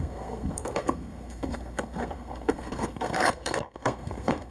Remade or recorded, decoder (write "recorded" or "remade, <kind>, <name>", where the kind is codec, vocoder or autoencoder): remade, codec, SNAC